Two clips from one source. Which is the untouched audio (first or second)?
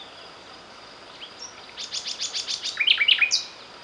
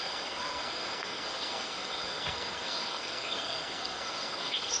first